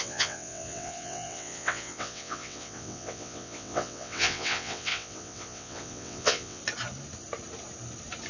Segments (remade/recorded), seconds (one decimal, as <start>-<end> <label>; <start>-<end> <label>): 0.0-6.6 remade; 6.6-8.3 recorded